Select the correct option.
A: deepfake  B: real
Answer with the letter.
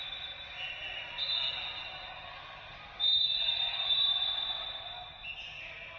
B